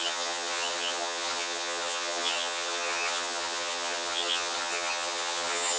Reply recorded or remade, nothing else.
remade